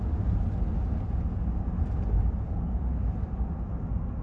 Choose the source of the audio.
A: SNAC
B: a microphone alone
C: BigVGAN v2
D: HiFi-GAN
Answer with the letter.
B